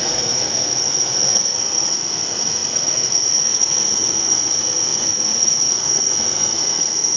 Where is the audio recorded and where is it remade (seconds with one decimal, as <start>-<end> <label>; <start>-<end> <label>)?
0.0-7.2 remade